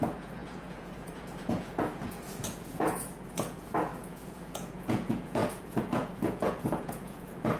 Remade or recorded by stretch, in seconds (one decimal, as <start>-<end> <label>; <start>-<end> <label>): 0.0-7.6 remade